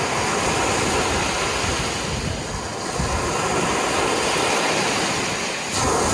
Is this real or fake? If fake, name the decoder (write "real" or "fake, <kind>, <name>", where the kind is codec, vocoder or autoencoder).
real